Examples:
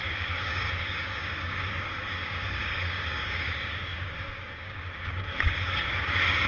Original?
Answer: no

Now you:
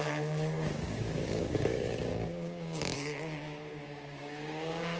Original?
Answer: no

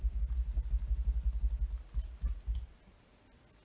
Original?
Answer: yes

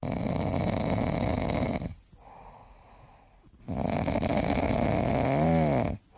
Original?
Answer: yes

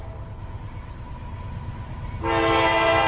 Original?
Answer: yes